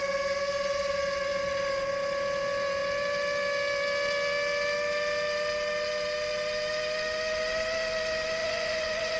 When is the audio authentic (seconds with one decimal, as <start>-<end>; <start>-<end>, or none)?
0.0-8.4